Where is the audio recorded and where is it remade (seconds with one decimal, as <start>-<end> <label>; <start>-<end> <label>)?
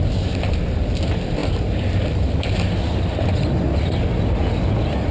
0.0-5.1 recorded